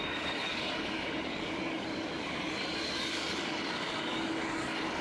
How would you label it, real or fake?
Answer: fake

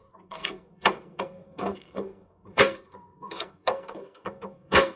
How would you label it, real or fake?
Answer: fake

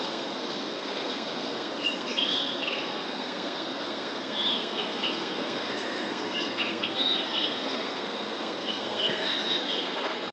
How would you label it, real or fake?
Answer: fake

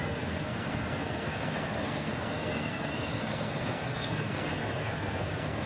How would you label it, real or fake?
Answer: fake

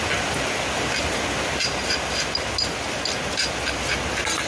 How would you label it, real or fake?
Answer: real